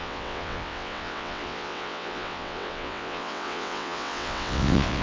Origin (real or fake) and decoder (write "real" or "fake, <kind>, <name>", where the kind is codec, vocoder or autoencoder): fake, vocoder, WaveNeXt